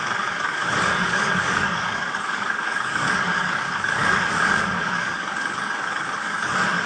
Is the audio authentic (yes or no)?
no